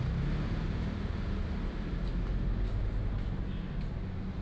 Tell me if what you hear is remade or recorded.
recorded